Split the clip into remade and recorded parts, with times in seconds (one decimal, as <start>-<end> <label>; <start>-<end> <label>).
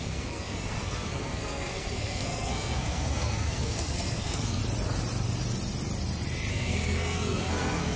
0.0-4.6 remade; 4.6-6.5 recorded; 6.5-8.0 remade